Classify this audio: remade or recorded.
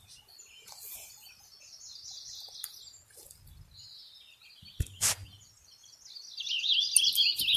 recorded